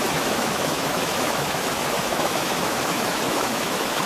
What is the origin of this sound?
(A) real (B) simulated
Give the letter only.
B